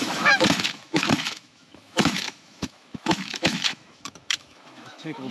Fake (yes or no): yes